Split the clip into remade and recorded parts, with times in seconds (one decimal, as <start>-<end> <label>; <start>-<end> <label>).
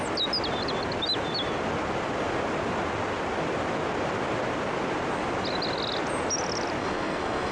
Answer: 0.0-6.8 recorded; 6.8-7.5 remade